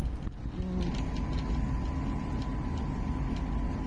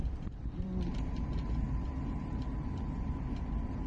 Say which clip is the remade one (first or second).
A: second